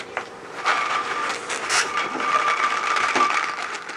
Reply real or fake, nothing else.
fake